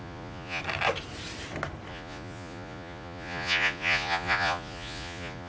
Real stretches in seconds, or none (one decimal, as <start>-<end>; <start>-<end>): 0.6-1.9